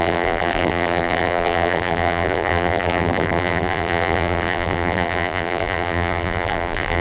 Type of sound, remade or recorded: remade